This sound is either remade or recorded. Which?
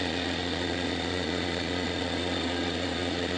remade